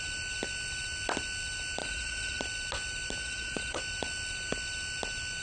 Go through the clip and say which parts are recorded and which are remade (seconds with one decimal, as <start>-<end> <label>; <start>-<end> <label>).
0.0-1.8 recorded; 1.8-2.4 remade; 2.4-3.2 recorded; 3.2-3.8 remade; 3.8-5.4 recorded